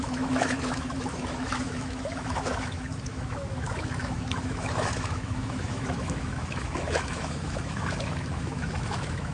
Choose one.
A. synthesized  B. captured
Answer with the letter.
A